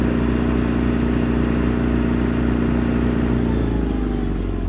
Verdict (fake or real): real